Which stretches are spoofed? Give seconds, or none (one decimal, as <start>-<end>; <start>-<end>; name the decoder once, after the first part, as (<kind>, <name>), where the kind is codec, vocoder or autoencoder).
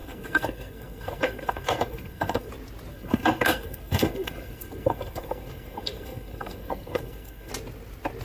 0.0-2.5 (codec, SNAC); 2.9-7.5